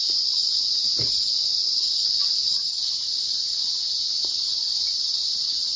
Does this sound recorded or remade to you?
recorded